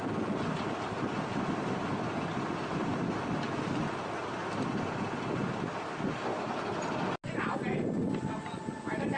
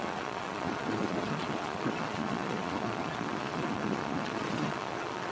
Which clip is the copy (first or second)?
second